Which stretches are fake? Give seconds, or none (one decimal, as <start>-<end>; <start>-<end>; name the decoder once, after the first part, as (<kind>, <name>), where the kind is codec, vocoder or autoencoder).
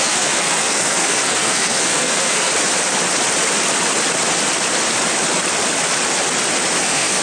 0.0-2.5 (codec, SNAC); 6.8-7.2